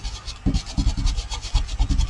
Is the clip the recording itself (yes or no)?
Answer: yes